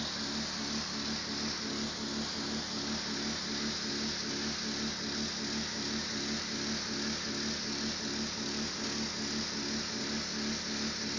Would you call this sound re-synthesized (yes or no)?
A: no